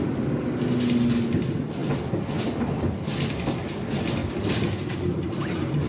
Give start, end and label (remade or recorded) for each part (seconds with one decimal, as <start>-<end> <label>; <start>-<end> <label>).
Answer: 0.0-5.9 recorded